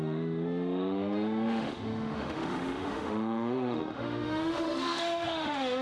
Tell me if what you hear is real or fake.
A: fake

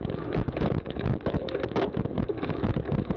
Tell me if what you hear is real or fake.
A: fake